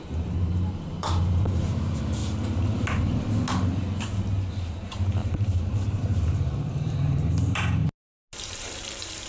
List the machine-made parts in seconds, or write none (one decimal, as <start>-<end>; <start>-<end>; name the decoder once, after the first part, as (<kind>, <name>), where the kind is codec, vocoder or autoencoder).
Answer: 0.0-2.2 (vocoder, BigVGAN v2); 4.5-7.8; 8.4-9.3